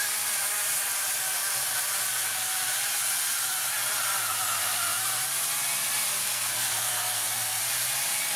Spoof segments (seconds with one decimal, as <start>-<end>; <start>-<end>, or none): 6.1-7.6